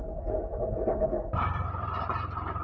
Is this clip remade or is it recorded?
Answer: recorded